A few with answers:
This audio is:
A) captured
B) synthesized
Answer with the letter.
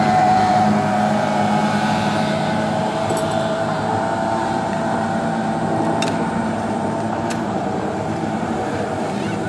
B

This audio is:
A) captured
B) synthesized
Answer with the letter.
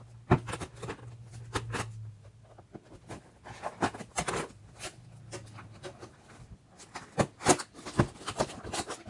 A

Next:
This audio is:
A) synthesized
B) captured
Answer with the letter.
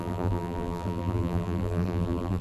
A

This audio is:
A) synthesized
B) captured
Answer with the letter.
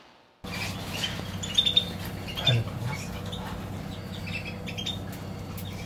B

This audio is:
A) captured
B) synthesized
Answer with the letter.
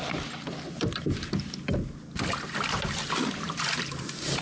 A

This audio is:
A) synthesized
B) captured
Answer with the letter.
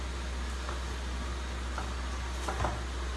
B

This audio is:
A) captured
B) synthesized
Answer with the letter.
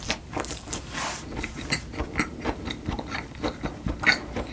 A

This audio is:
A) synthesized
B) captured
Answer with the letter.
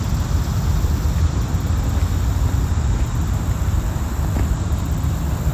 A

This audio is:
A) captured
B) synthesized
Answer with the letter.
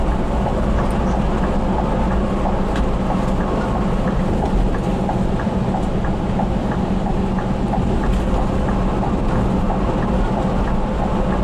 A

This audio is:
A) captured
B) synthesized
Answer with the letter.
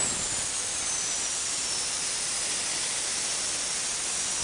A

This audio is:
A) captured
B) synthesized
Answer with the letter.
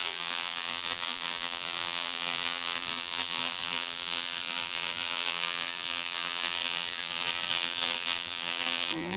B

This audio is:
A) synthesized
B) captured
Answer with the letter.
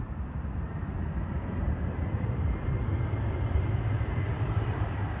A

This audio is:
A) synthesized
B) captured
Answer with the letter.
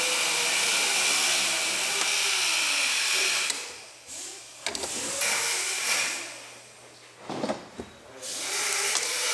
B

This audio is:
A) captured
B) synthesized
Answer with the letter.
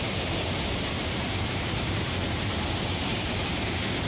B